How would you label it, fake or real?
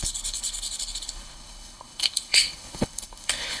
fake